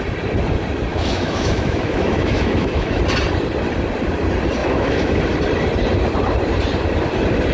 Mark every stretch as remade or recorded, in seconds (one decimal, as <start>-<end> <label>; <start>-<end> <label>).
0.0-0.9 recorded; 0.9-3.0 remade; 3.0-4.6 recorded; 4.6-5.2 remade; 5.2-7.5 recorded